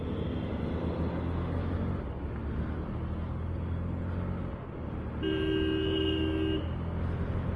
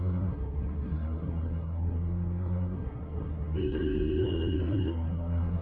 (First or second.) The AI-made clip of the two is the second